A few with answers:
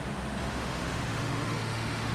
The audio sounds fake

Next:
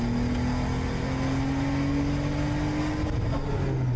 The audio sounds real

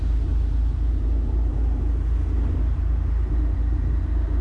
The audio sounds real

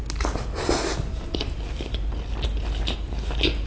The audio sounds real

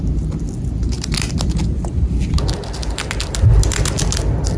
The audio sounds real